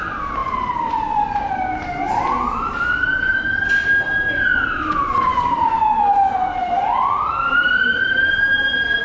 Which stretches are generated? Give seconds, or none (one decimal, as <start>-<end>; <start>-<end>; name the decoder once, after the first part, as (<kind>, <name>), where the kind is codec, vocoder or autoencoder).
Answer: 0.4-0.9 (vocoder, BigVGAN v2); 5.3-8.6